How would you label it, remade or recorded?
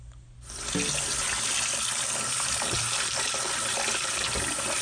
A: recorded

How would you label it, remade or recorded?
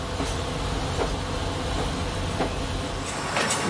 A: recorded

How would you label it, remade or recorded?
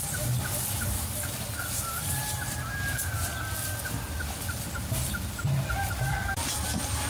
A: remade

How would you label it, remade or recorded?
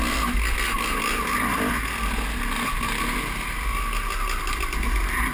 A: recorded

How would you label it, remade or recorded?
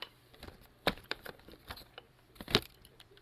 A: remade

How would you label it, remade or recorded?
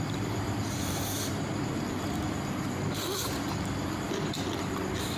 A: remade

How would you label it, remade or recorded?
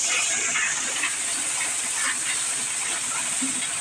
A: recorded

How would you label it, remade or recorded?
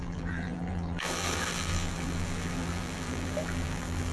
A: remade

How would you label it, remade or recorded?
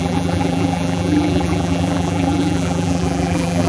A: remade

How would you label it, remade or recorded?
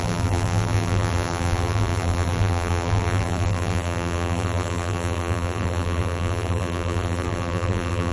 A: remade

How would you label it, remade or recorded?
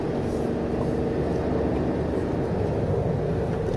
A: recorded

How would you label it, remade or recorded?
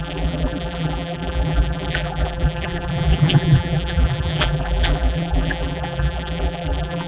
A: remade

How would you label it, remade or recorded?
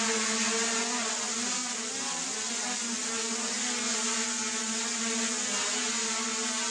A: recorded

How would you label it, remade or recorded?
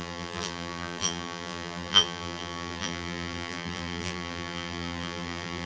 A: remade